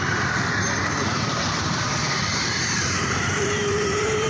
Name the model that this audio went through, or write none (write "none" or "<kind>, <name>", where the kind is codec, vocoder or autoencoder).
vocoder, BigVGAN v2